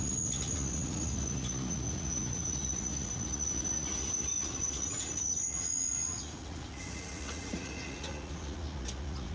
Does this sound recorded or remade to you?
remade